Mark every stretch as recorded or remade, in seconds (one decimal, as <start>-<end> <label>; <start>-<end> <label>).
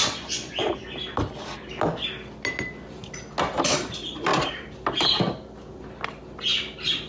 0.0-0.6 remade; 0.6-7.1 recorded